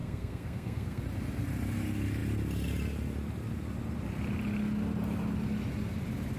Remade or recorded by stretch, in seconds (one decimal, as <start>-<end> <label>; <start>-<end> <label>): 0.0-1.0 remade; 1.0-6.4 recorded